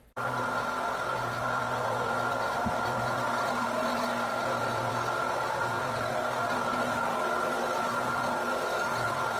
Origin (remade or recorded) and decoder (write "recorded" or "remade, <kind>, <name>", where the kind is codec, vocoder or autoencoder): recorded